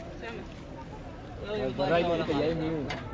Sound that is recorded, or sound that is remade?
recorded